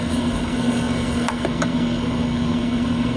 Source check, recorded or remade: remade